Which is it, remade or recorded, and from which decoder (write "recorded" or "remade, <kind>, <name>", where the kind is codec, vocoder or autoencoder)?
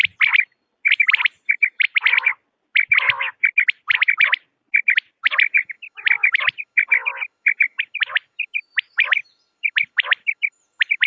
recorded